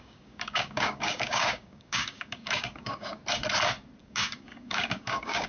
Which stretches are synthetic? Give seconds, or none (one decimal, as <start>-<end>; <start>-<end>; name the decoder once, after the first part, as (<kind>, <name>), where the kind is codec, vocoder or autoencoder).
0.0-3.2 (codec, DAC); 4.0-5.5